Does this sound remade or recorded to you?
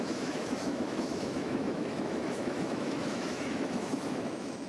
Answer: remade